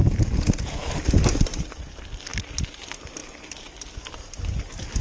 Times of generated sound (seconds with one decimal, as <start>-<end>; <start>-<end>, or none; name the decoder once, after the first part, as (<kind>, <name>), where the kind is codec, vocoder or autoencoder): 0.0-0.9 (vocoder, Vocos)